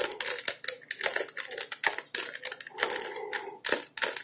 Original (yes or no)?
yes